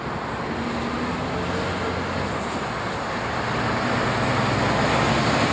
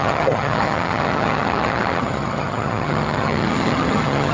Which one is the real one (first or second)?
first